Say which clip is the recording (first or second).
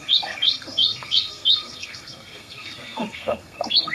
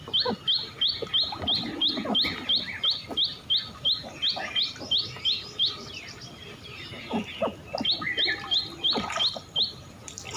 second